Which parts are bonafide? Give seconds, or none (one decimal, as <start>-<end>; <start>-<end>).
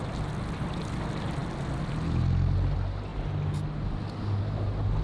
0.0-5.0